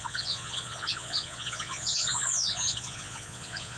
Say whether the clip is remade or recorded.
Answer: remade